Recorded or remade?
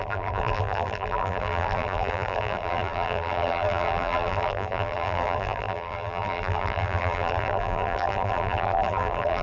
remade